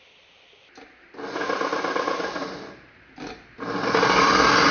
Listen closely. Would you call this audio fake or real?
real